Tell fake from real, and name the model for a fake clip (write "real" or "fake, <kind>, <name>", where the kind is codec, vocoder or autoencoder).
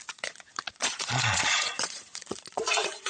fake, vocoder, Vocos